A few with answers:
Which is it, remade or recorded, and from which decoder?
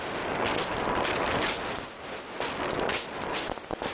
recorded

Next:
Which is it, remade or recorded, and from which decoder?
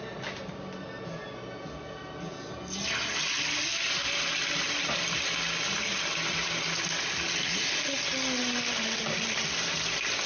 recorded